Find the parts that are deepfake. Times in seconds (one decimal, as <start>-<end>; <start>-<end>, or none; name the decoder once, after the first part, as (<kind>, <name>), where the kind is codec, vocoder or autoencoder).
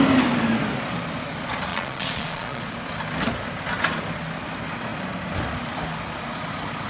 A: 1.7-2.6 (vocoder, Vocos)